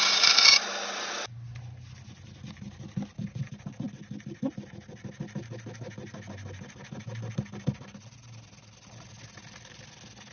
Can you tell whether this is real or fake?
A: real